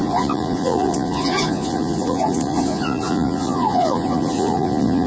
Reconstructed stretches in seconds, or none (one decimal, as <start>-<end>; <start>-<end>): 0.0-5.1